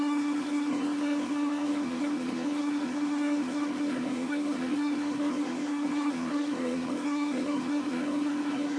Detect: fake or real fake